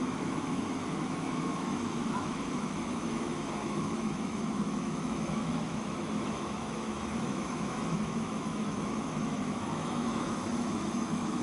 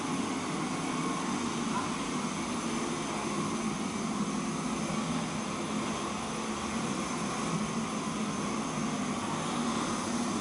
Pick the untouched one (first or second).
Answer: second